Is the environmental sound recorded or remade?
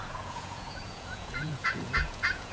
remade